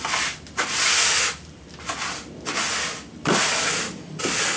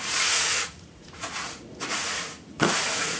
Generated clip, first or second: second